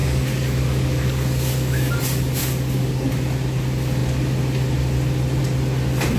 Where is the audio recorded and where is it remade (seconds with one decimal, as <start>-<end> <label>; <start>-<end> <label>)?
0.0-2.0 remade; 2.0-2.4 recorded; 2.4-3.1 remade; 3.1-6.2 recorded

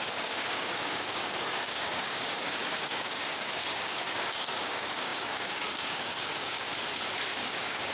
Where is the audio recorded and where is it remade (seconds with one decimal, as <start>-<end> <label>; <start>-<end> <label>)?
0.0-6.7 remade; 6.7-7.4 recorded; 7.4-7.9 remade

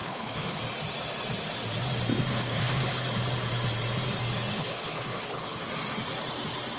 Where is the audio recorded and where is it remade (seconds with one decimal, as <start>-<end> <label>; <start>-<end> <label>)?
0.0-0.6 remade; 0.6-2.3 recorded; 2.3-3.0 remade; 3.0-4.5 recorded; 4.5-5.7 remade; 5.7-6.8 recorded

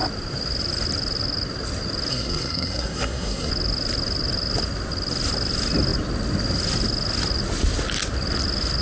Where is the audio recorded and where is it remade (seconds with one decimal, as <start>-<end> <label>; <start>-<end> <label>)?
0.0-2.1 recorded; 2.1-3.5 remade; 3.5-8.8 recorded

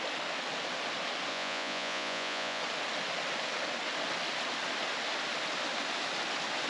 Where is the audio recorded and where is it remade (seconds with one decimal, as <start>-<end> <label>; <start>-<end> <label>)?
0.0-1.3 recorded; 1.3-2.6 remade; 2.6-6.7 recorded

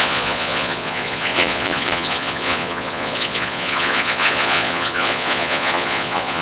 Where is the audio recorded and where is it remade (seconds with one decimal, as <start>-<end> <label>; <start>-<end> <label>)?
0.0-6.4 remade